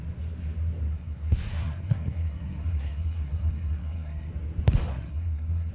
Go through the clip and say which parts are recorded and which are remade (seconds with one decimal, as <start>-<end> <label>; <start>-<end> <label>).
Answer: 0.0-0.9 recorded; 0.9-4.3 remade; 4.3-4.9 recorded; 4.9-5.7 remade